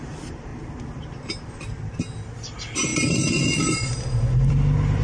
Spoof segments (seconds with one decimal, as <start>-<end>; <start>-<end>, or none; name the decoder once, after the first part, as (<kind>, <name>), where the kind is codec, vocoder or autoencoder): none